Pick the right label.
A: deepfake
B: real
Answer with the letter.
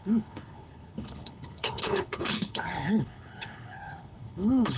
A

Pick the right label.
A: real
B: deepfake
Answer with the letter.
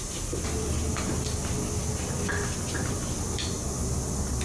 A